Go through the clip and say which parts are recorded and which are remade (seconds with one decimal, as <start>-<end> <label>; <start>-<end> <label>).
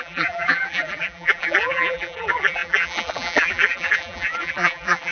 0.0-5.1 remade